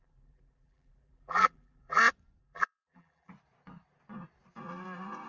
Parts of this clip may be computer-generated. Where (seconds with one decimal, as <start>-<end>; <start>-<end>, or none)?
0.0-2.0; 2.4-3.3